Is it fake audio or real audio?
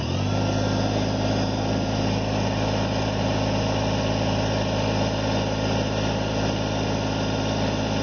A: real